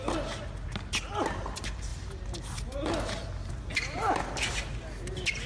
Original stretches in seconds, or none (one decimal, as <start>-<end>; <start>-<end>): 0.0-5.5